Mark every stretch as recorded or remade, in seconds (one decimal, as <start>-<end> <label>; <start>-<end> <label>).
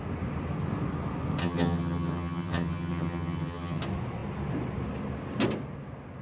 0.0-1.4 recorded; 1.4-3.8 remade; 3.8-6.2 recorded